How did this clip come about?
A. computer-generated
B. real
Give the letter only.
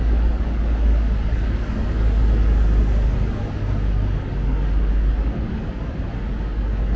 A